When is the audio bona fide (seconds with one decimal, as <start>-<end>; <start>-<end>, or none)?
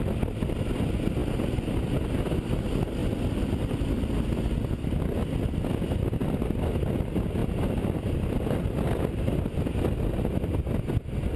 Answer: 0.0-3.0; 4.9-11.4